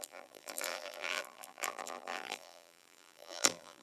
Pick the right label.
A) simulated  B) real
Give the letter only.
A